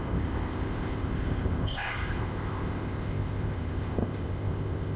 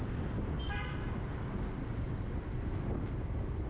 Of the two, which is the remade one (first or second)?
first